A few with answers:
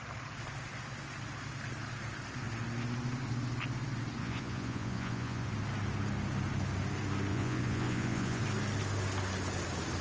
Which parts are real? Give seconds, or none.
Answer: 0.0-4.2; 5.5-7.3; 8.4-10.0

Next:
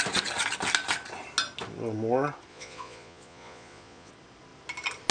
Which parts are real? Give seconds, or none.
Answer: 0.0-2.5; 4.1-5.1

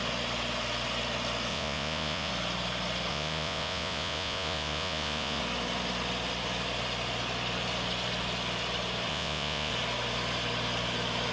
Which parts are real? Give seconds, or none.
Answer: 0.0-1.5; 2.3-3.1; 5.4-9.1; 9.7-11.3

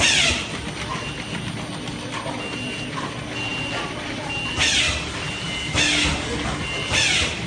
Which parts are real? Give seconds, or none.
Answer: 0.0-7.5